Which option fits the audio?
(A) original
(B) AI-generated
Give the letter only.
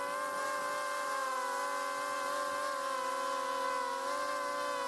A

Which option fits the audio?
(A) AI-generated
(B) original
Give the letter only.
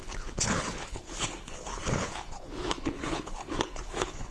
A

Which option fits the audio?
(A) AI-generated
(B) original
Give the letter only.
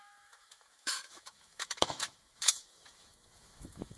A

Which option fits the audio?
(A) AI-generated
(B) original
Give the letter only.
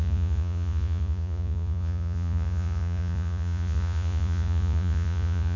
A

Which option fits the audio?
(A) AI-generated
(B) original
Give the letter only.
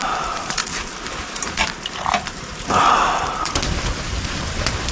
A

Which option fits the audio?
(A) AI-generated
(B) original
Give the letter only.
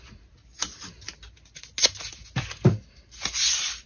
B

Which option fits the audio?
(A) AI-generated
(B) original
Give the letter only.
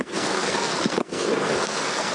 A